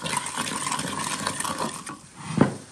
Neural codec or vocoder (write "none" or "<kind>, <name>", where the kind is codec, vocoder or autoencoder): none